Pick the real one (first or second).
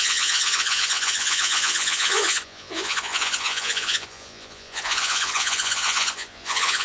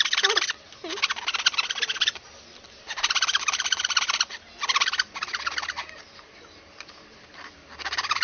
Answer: second